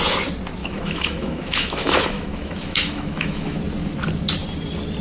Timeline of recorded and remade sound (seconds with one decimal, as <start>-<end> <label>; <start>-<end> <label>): 0.0-0.6 recorded; 0.6-3.6 remade; 3.6-5.0 recorded